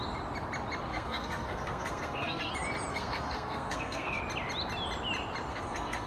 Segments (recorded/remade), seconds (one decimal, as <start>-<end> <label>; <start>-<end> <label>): 0.0-0.9 recorded; 0.9-2.5 remade; 2.5-2.9 recorded; 2.9-4.2 remade; 4.2-5.5 recorded; 5.5-6.1 remade